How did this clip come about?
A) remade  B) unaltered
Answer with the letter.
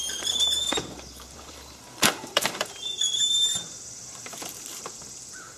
A